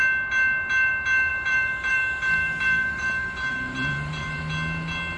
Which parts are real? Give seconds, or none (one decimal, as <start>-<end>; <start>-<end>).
0.0-1.3; 4.4-5.2